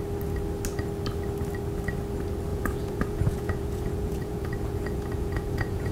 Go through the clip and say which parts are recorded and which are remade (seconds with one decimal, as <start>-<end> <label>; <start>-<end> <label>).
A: 0.0-2.5 recorded; 2.5-5.9 remade